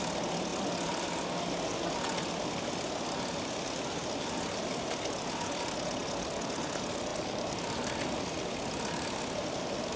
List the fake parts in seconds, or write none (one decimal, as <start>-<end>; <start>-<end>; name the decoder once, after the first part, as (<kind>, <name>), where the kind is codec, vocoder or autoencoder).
7.1-8.3 (vocoder, BigVGAN v2)